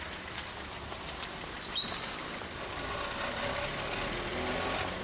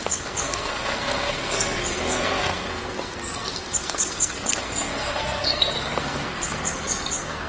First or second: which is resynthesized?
second